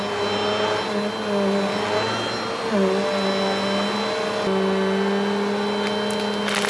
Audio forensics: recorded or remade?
recorded